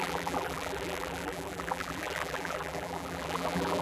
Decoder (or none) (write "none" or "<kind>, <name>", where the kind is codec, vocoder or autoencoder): vocoder, BigVGAN v2